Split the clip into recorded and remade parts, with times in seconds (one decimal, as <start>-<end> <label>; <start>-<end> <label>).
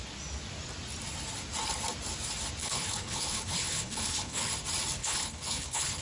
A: 0.0-2.6 recorded; 2.6-4.5 remade; 4.5-5.0 recorded; 5.0-6.0 remade